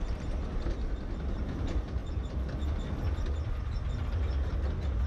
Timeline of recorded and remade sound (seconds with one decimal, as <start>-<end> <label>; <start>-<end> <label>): 0.0-5.1 recorded